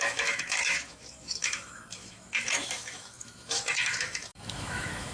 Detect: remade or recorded remade